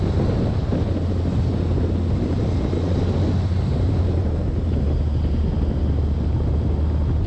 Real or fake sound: real